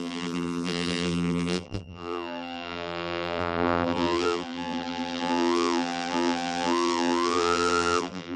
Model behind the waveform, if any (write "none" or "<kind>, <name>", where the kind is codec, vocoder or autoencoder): vocoder, BigVGAN v2